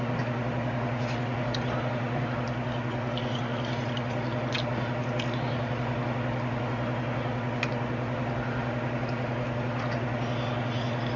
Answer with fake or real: real